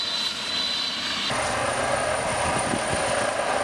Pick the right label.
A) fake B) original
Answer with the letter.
B